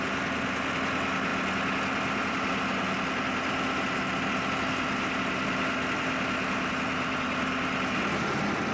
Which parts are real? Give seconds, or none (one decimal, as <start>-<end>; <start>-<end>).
0.0-8.7

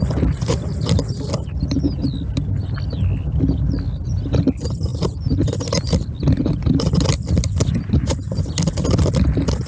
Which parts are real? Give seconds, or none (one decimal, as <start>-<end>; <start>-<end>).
0.0-9.7

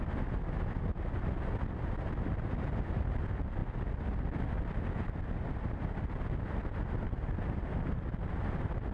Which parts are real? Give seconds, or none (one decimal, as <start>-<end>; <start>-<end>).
0.0-8.9